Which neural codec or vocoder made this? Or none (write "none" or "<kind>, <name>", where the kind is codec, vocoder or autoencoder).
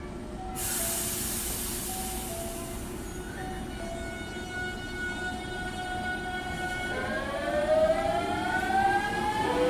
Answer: none